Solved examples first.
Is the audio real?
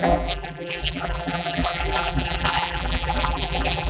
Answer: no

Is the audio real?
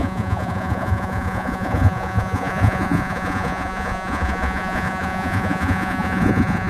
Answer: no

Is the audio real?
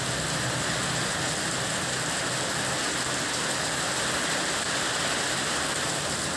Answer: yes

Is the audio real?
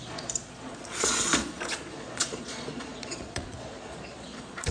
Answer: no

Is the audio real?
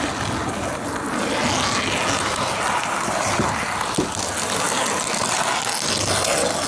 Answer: yes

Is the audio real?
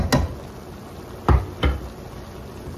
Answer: yes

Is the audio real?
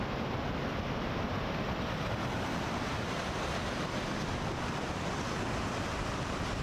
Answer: no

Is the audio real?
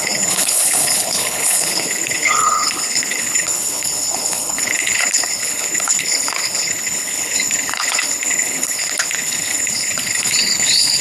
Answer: no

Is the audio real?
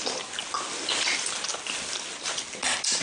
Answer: yes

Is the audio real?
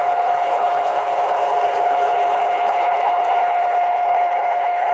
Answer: no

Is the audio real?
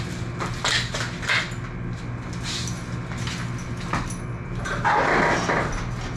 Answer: yes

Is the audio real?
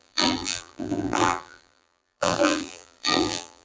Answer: no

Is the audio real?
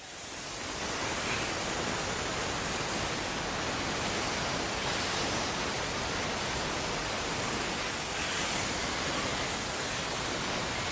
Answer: yes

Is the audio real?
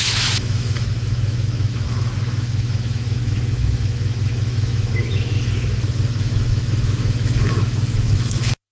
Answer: no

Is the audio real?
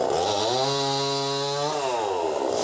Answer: yes